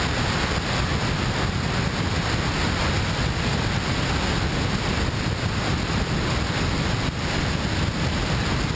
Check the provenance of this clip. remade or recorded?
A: recorded